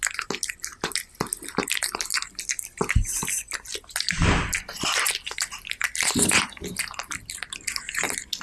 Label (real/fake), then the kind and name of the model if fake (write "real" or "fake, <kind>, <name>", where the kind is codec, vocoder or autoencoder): real